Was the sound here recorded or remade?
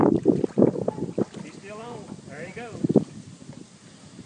recorded